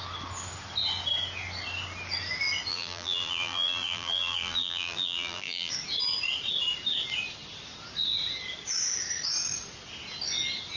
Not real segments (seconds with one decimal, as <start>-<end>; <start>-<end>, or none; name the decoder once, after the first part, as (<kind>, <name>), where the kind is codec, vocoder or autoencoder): 2.7-5.7 (vocoder, BigVGAN v2)